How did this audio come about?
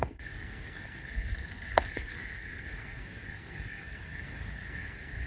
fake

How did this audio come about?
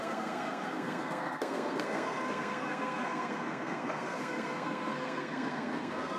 fake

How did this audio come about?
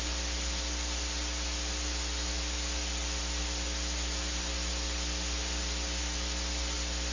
real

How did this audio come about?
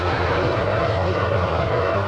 fake